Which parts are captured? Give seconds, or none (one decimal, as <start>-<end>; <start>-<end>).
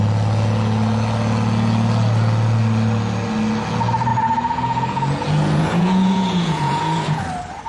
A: 0.0-4.1; 7.2-7.7